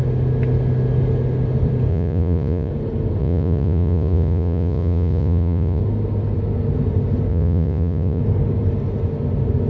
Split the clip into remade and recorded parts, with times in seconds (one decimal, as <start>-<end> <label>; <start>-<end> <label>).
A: 0.0-1.9 recorded; 1.9-2.7 remade; 2.7-3.2 recorded; 3.2-5.8 remade; 5.8-7.3 recorded; 7.3-8.2 remade; 8.2-9.7 recorded